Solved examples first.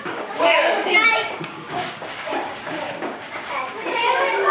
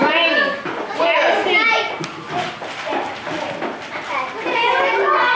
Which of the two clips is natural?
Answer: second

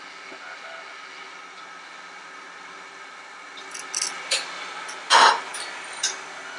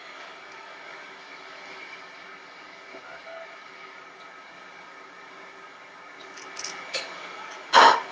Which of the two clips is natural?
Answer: first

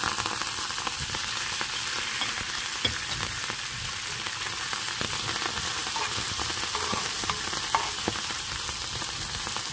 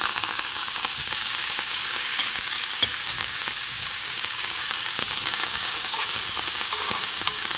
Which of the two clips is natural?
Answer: first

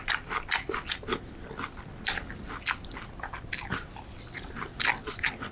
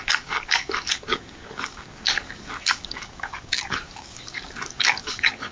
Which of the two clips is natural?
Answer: first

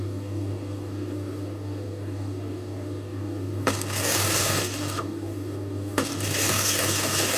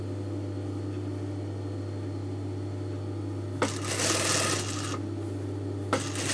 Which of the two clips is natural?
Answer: second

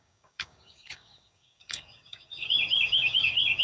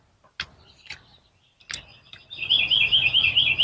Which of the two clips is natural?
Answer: second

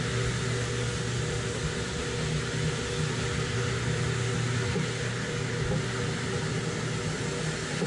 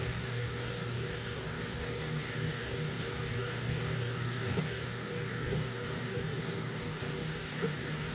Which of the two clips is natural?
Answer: first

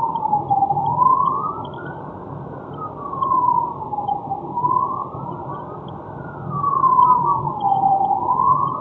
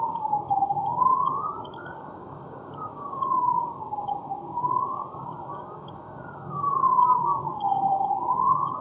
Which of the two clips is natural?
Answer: first